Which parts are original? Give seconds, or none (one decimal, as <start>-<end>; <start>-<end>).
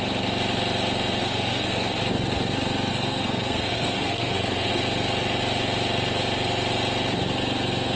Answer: 0.0-1.2; 2.0-2.9; 4.7-8.0